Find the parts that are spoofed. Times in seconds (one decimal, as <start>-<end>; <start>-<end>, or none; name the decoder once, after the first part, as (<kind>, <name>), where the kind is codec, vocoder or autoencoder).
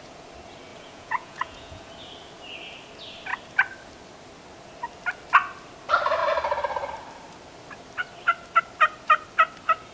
0.7-1.9 (vocoder, Vocos)